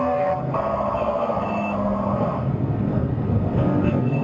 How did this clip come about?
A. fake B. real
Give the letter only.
A